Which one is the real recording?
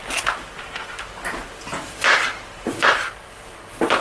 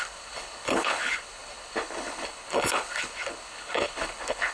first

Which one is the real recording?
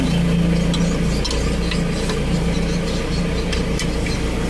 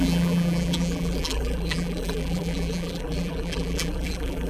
first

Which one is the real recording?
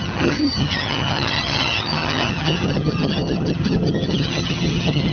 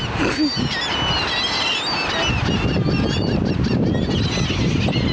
second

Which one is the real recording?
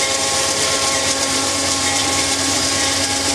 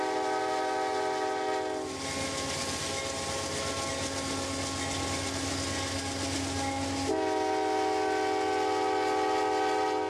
second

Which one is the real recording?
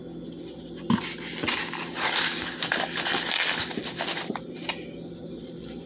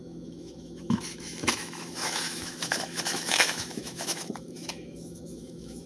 first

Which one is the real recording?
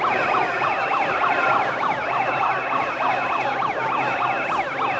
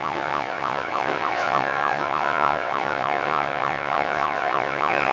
first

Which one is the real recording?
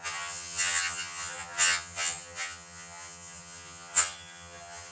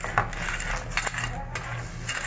second